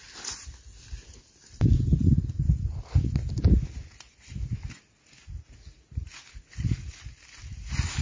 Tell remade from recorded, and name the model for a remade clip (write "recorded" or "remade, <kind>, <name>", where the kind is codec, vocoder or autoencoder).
recorded